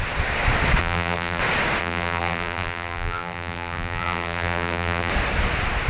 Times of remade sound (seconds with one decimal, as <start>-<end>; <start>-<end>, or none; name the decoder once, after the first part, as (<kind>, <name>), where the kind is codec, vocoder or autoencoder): 0.8-1.4 (vocoder, BigVGAN v2); 1.8-5.1